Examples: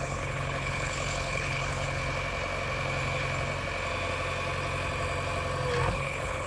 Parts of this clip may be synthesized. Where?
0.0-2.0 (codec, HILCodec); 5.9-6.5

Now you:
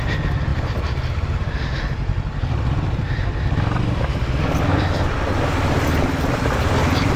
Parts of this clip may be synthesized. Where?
none

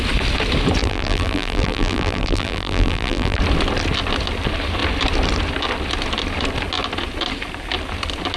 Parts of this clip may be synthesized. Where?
0.8-3.4 (vocoder, BigVGAN v2)

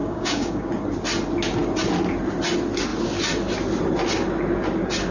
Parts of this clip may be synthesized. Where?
0.0-0.7 (codec, DAC)

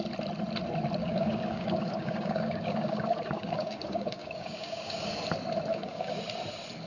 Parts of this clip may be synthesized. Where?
1.0-5.1 (codec, DAC); 5.7-6.2

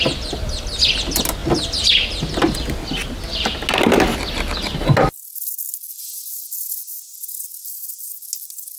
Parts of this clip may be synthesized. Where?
none